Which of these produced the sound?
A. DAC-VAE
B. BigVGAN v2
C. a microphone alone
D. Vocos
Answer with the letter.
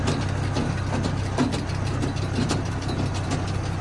C